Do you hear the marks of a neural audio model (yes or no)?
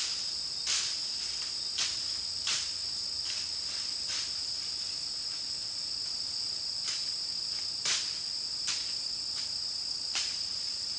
no